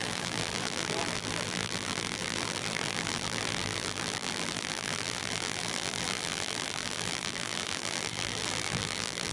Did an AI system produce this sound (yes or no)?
yes